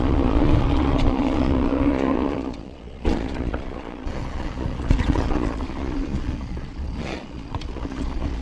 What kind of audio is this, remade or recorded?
remade